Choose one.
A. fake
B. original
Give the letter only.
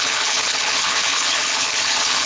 A